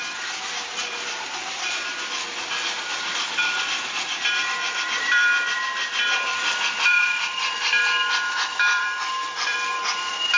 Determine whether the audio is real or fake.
fake